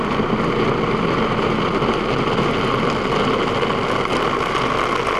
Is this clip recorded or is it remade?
recorded